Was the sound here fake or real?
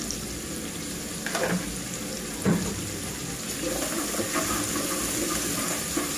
real